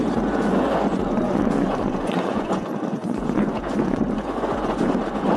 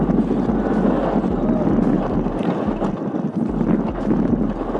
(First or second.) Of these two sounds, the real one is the second